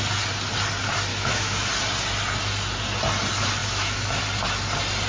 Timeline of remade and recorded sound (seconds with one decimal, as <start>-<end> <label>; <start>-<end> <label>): 0.0-1.1 recorded; 1.1-1.7 remade; 1.7-3.6 recorded; 3.6-4.2 remade; 4.2-5.1 recorded